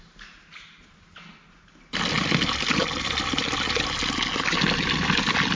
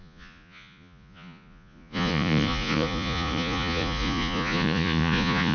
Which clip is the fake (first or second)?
second